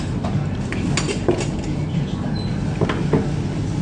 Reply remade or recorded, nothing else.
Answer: recorded